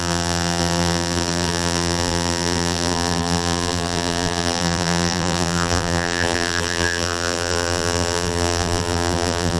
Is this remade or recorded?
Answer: remade